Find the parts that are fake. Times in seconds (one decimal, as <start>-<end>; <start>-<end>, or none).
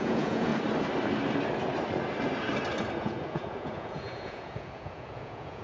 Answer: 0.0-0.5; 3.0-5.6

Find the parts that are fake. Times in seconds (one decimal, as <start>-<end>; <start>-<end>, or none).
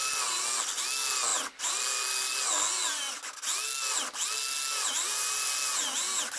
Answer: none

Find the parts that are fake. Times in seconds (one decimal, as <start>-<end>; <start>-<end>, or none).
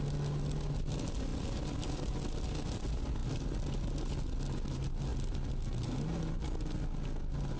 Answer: none